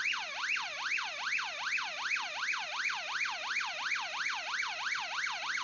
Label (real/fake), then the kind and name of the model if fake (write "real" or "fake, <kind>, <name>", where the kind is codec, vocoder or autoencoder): real